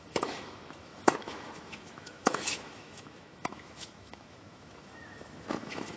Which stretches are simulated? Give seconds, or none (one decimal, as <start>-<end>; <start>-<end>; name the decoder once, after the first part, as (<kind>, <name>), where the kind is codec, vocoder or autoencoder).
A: 0.0-6.0 (autoencoder, DAC-VAE)